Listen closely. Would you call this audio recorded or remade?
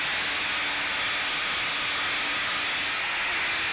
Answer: recorded